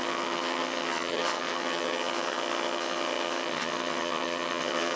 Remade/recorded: remade